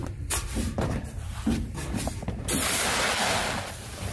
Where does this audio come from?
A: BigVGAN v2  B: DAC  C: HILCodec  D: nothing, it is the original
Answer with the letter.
D